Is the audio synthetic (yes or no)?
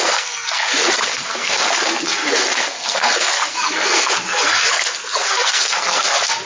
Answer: yes